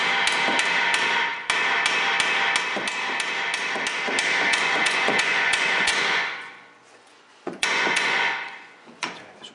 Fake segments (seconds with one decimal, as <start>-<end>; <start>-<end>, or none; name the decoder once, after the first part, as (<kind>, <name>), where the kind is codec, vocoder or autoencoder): 4.5-9.5 (vocoder, Vocos)